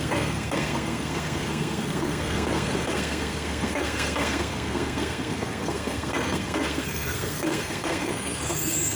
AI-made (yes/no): yes